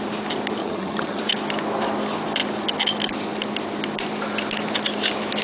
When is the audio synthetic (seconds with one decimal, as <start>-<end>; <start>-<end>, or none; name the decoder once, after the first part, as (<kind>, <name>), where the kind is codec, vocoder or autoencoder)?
0.6-1.2 (vocoder, HiFi-GAN)